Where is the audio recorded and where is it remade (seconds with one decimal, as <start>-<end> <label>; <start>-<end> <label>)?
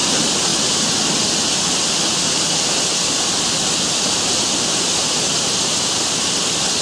0.0-6.8 recorded